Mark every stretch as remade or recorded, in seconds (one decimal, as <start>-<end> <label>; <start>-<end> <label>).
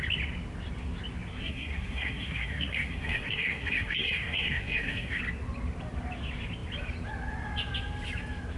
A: 0.0-1.4 recorded; 1.4-5.2 remade; 5.2-8.6 recorded